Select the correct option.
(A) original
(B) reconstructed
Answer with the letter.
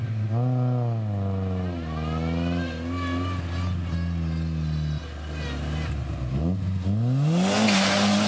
A